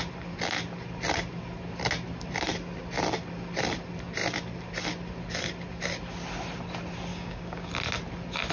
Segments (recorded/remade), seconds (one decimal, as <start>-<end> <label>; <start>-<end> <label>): 0.0-7.1 recorded; 7.1-7.7 remade; 7.7-8.5 recorded